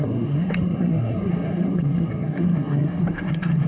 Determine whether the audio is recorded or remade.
remade